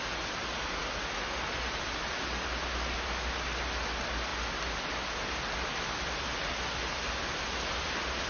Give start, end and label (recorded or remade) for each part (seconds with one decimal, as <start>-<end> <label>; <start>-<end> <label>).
0.0-8.3 recorded